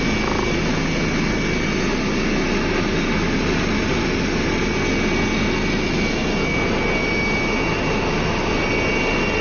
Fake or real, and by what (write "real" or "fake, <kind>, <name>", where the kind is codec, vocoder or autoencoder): real